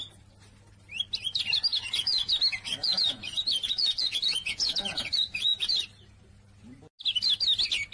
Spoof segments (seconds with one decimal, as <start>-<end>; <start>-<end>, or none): 1.7-2.3; 2.8-5.8

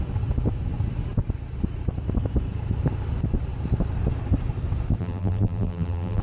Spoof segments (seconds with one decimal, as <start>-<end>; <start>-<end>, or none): 5.0-6.2

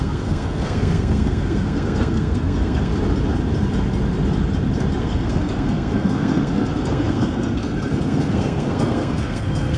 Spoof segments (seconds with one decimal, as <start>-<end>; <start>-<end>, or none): 0.0-2.9; 5.0-9.8

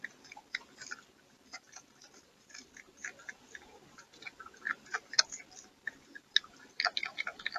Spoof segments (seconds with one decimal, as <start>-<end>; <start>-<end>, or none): none

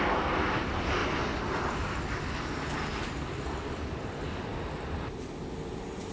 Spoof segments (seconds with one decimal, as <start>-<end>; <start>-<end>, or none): 0.0-1.0; 3.6-6.1

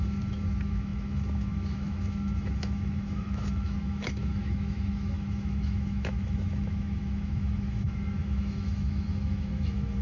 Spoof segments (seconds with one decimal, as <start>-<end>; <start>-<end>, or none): 0.0-10.0

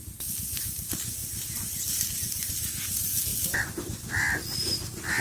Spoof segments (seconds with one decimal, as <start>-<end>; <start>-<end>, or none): none

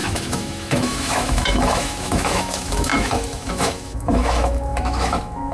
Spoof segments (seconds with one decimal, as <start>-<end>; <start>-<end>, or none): 0.0-5.5